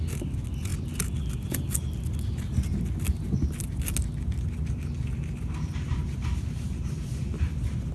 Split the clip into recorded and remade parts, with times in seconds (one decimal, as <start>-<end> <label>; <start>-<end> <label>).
0.0-7.9 recorded